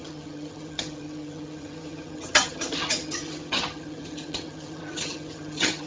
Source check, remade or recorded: remade